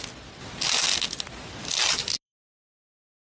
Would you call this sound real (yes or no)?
yes